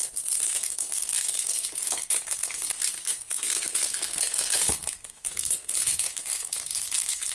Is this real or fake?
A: fake